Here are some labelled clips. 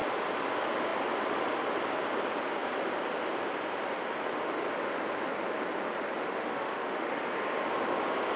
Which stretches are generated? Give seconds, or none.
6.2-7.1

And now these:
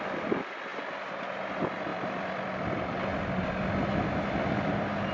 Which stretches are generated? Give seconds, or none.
1.9-3.0

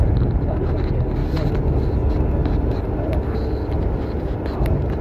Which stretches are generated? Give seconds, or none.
0.0-1.2; 4.2-5.0

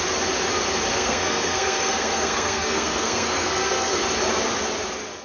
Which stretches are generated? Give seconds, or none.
0.9-4.0

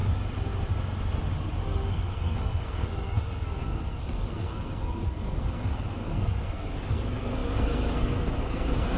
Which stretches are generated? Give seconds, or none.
1.9-9.0

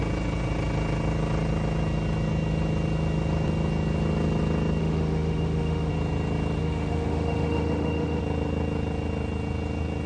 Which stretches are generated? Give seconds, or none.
4.8-5.9; 6.6-8.2

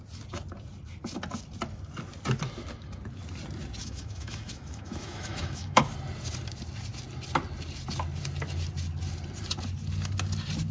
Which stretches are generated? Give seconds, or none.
3.8-5.8